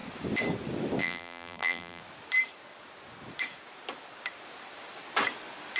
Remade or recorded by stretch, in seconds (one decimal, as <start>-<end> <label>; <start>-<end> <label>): 0.0-1.0 recorded; 1.0-2.0 remade; 2.0-5.8 recorded